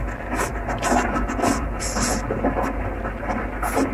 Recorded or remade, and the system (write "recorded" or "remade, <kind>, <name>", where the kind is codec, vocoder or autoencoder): recorded